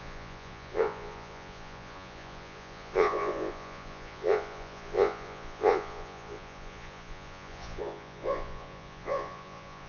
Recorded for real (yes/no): no